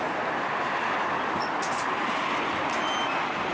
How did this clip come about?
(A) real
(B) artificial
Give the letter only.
A